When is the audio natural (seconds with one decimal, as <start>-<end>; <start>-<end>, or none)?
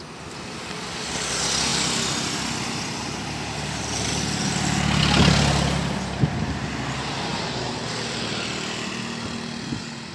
0.0-10.1